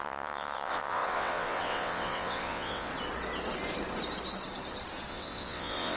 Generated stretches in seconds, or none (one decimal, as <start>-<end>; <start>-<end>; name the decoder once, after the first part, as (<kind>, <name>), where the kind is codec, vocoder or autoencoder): 0.0-2.9 (vocoder, WaveNeXt); 5.1-6.0